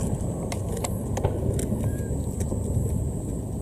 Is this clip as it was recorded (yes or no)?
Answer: yes